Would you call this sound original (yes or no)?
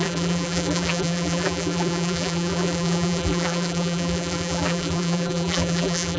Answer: no